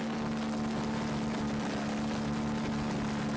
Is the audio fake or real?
real